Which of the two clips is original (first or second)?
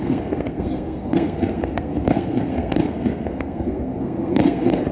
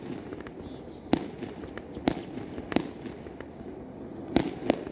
second